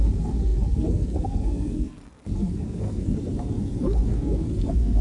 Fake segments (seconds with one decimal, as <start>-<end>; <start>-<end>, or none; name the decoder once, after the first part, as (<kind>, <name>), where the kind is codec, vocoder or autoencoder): 0.0-5.0 (codec, SNAC)